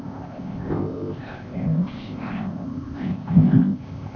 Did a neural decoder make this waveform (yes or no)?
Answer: yes